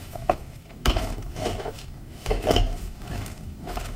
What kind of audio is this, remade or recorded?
remade